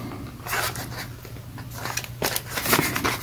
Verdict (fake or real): real